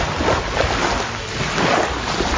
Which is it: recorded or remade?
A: recorded